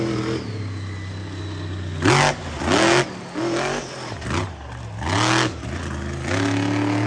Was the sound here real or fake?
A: real